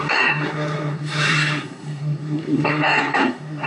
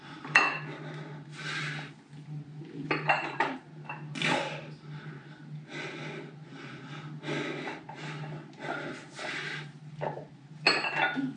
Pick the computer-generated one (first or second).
first